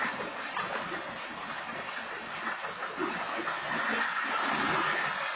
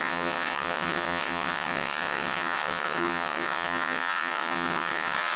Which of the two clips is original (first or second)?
first